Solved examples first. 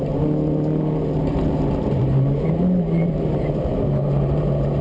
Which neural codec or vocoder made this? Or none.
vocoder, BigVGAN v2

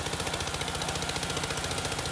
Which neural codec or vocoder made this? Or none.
none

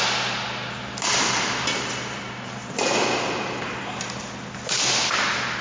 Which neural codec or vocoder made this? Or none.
none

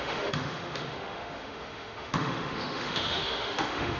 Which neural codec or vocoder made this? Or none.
autoencoder, DAC-VAE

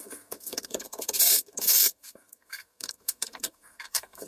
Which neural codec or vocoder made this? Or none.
codec, SNAC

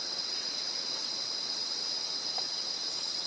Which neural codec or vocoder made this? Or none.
vocoder, WaveNeXt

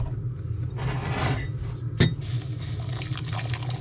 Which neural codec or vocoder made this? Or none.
none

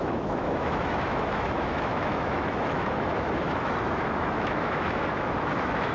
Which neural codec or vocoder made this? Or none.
autoencoder, DAC-VAE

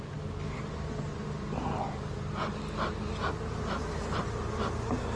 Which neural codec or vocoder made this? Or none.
none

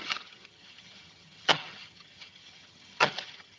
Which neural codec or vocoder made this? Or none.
vocoder, HiFi-GAN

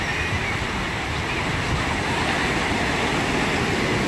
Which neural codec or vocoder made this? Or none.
none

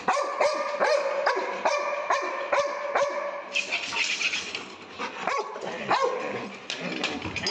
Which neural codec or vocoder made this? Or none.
none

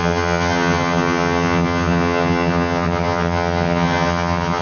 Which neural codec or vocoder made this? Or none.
vocoder, HiFi-GAN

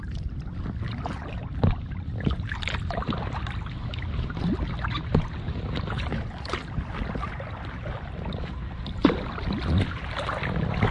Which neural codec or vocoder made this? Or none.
none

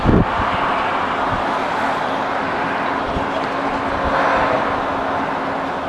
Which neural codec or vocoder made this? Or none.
none